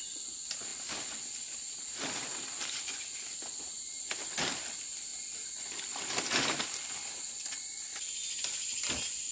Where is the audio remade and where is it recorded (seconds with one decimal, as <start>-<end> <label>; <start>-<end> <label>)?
0.0-9.3 recorded